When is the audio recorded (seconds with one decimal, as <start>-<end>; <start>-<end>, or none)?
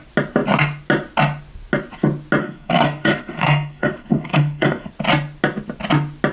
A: 0.0-2.4; 4.9-6.3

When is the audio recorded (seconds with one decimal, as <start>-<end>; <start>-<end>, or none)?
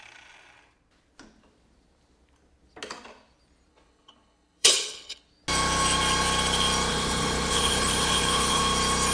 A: 0.0-3.7; 5.3-6.9; 8.6-9.1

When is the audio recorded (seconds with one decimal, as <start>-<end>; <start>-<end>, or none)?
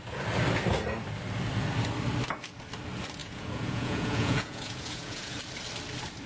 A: 0.0-3.2; 5.4-6.3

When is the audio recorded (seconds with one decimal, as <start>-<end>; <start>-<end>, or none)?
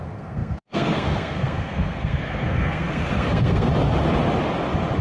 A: 3.7-5.0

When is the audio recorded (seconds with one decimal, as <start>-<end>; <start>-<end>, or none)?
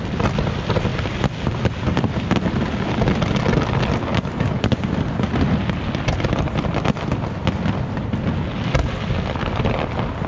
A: 0.0-10.3